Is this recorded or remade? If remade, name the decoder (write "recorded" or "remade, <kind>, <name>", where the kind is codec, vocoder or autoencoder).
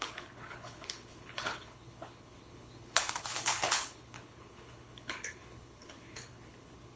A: remade, codec, HILCodec